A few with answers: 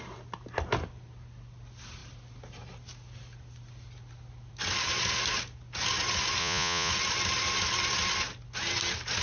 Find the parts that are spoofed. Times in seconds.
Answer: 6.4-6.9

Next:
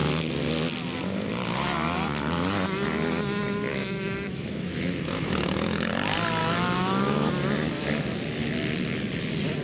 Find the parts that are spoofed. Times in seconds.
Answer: 3.7-5.9; 6.4-7.3